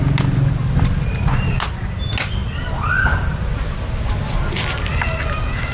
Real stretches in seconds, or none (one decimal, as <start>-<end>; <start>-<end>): 0.0-5.7